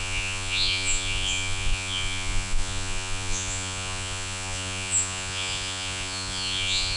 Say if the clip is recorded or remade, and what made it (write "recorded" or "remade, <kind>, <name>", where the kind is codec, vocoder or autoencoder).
remade, vocoder, Vocos